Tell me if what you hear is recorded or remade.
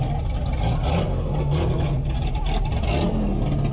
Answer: recorded